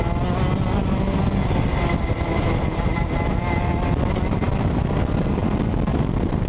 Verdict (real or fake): real